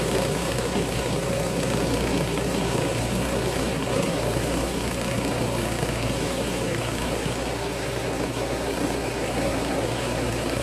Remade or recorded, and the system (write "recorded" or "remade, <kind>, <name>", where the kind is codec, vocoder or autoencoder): remade, codec, SNAC